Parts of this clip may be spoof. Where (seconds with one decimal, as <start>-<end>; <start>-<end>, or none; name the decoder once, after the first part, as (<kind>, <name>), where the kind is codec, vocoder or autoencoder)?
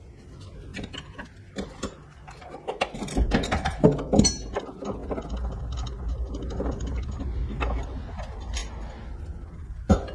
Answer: 0.7-2.7 (vocoder, BigVGAN v2)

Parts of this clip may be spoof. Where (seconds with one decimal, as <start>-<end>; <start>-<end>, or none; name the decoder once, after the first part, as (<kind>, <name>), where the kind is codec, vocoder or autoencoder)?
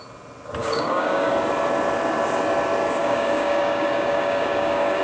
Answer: 0.6-1.3 (codec, DAC); 3.0-5.0